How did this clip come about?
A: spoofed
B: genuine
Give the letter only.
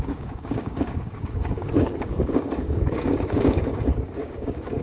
A